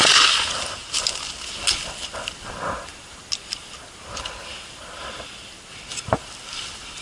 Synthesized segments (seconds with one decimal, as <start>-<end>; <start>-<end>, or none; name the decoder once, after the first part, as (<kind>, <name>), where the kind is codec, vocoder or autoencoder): none